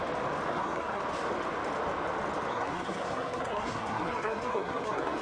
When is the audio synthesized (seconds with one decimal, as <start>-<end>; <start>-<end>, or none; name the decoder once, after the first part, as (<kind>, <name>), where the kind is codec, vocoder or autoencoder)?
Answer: 0.5-1.0 (codec, SNAC); 2.5-5.2